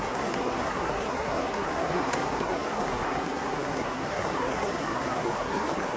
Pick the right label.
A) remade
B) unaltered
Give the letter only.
A